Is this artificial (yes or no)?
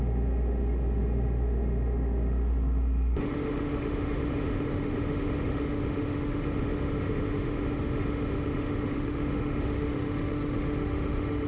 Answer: yes